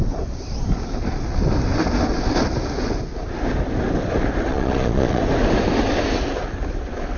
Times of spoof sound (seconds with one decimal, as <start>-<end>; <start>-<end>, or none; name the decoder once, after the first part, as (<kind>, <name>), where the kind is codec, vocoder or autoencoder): 4.5-5.2 (vocoder, Vocos)